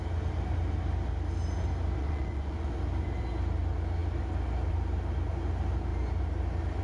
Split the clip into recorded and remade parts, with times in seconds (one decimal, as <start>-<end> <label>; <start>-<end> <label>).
0.0-2.0 recorded; 2.0-2.7 remade; 2.7-6.8 recorded